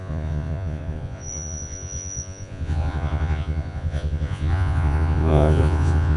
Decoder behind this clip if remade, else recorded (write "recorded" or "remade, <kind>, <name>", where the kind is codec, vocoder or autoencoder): remade, vocoder, Vocos